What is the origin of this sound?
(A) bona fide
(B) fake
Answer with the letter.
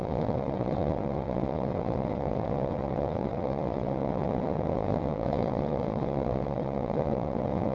B